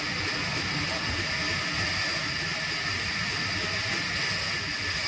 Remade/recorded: recorded